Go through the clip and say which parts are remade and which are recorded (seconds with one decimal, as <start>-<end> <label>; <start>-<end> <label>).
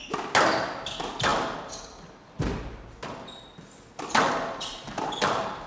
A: 0.0-5.7 recorded